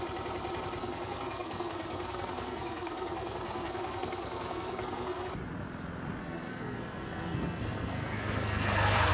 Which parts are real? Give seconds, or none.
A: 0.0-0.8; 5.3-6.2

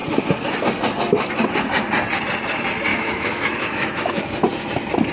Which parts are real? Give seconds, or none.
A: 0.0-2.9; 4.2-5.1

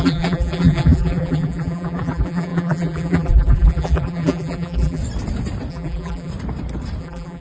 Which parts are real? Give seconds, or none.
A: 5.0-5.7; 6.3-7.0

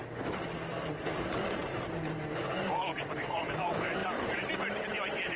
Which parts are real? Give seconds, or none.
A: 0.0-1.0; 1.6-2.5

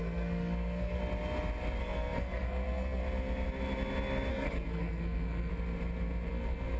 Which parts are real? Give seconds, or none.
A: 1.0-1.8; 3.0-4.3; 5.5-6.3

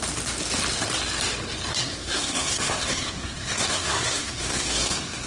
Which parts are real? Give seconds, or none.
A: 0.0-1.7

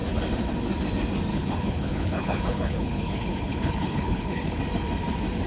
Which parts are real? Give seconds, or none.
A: 0.0-1.3; 4.6-5.5